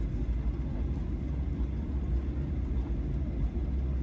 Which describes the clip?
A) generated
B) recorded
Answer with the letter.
B